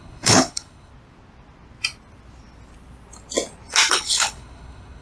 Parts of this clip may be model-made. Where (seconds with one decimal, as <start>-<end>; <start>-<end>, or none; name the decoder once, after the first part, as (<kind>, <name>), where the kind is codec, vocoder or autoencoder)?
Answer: 0.0-0.9 (codec, HILCodec); 3.9-5.0